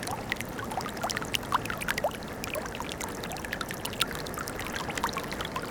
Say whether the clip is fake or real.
real